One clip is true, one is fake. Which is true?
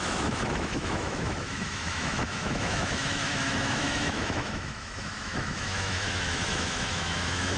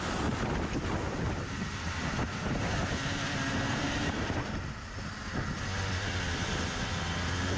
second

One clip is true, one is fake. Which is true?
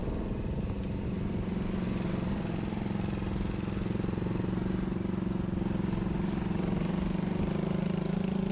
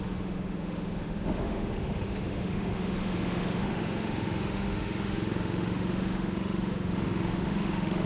first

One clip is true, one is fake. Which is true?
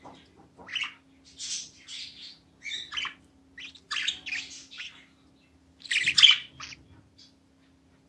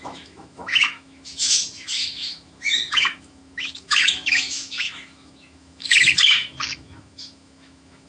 first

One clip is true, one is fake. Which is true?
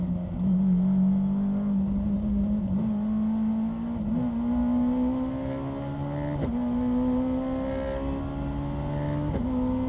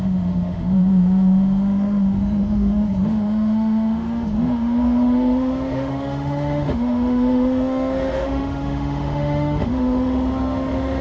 first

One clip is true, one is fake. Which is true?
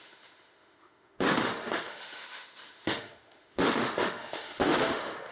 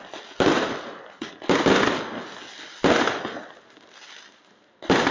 second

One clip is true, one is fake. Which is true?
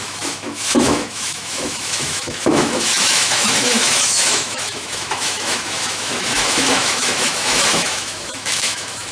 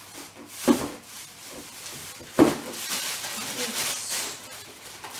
second